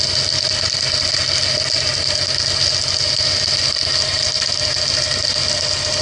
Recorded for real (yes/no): yes